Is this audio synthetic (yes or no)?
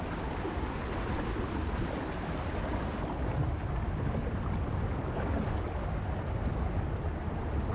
no